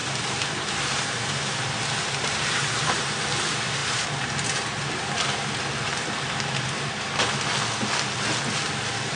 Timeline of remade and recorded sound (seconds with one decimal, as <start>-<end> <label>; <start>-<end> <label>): 0.0-3.2 remade; 3.2-3.8 recorded; 3.8-7.1 remade; 7.1-9.2 recorded